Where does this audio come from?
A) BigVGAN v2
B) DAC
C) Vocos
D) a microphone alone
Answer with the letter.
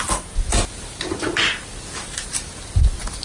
D